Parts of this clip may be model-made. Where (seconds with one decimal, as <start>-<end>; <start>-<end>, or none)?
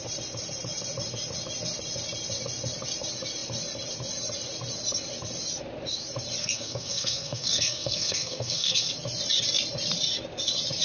6.4-8.9